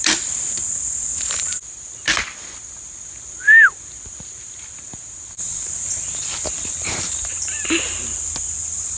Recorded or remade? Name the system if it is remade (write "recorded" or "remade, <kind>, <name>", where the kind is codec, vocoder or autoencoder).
recorded